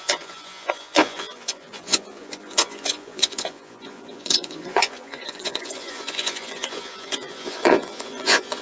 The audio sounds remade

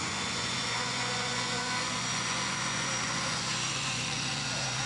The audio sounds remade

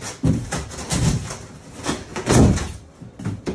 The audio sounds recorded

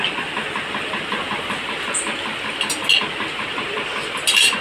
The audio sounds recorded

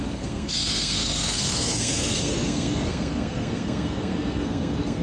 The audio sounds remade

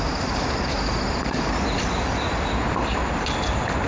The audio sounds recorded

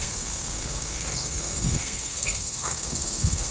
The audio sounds remade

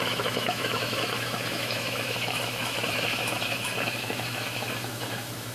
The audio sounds remade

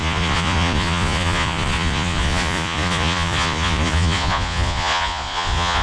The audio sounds remade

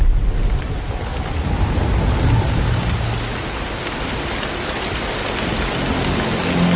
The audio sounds recorded